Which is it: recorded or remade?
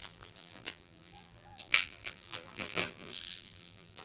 remade